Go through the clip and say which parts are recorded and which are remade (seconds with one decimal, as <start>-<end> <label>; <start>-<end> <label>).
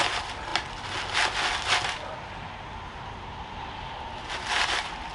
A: 0.0-5.1 recorded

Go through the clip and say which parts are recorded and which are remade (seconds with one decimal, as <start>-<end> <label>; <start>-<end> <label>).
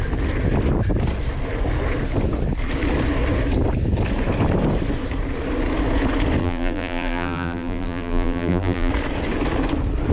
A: 0.0-6.4 recorded; 6.4-8.9 remade; 8.9-10.1 recorded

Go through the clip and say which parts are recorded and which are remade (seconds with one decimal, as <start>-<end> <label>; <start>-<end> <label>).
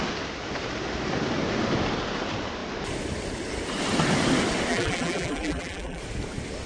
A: 0.0-4.7 recorded; 4.7-6.0 remade; 6.0-6.7 recorded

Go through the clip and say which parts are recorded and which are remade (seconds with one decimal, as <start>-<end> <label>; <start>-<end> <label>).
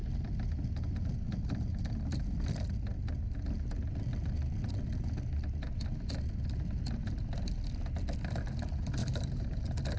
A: 0.0-9.0 recorded; 9.0-9.6 remade; 9.6-10.0 recorded